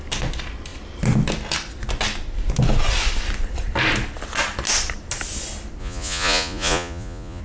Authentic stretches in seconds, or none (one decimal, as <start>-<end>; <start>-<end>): 0.0-5.8